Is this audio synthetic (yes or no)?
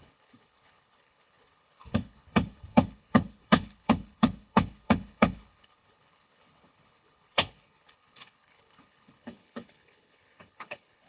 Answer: yes